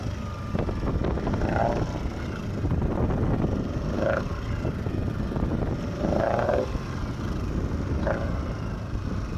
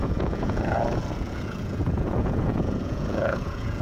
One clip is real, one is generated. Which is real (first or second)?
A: first